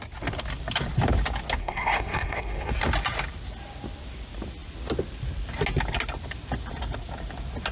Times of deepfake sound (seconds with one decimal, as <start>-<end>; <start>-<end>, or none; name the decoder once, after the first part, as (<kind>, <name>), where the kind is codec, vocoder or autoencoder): 1.6-2.7 (codec, SNAC)